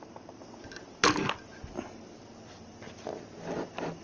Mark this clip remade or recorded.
recorded